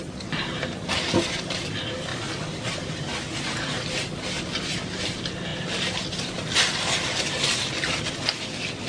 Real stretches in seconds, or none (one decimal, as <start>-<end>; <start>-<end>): 0.0-8.9